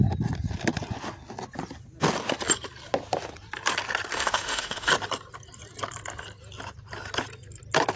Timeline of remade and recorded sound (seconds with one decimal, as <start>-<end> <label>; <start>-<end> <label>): 0.0-4.1 recorded; 4.1-4.9 remade; 4.9-8.0 recorded